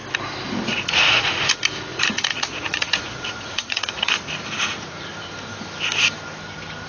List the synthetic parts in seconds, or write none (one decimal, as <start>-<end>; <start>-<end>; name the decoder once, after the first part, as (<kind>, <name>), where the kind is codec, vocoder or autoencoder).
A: 0.7-1.5 (vocoder, Vocos); 1.9-5.1